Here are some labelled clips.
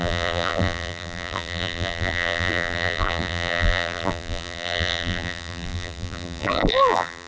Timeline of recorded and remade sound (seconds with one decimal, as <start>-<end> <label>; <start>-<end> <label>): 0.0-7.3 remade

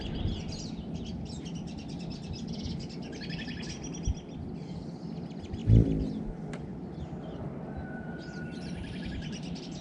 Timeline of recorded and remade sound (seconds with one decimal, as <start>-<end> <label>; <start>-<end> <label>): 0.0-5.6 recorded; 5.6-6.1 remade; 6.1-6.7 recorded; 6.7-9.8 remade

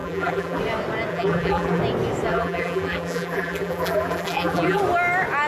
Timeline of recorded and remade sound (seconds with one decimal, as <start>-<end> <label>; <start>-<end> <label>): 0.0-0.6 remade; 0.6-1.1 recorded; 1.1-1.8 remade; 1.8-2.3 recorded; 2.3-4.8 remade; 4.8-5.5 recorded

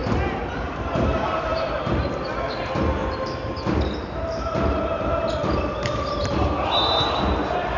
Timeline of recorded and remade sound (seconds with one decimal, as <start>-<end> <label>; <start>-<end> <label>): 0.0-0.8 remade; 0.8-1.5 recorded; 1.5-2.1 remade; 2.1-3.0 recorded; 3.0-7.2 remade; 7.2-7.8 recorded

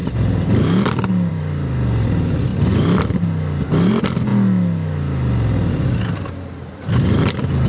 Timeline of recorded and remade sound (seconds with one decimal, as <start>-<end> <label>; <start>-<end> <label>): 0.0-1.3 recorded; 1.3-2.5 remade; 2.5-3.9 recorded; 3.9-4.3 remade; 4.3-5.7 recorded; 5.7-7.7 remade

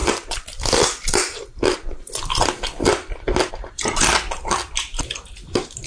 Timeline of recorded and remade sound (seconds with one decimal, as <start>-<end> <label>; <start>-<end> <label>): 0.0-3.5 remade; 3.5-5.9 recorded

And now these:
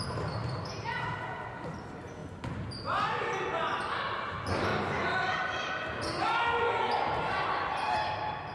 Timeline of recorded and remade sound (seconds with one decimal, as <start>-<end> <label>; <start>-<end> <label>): 0.0-0.4 recorded; 0.4-0.9 remade; 0.9-8.5 recorded